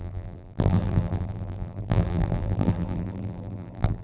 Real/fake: fake